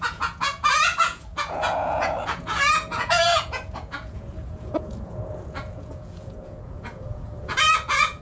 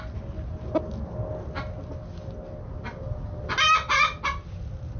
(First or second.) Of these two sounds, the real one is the second